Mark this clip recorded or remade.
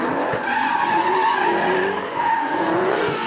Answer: remade